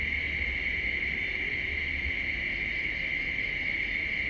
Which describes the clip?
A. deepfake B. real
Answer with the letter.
B